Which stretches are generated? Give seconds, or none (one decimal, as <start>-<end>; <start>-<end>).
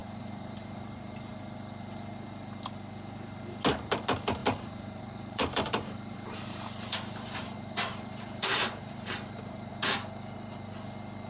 0.0-1.3; 4.4-9.7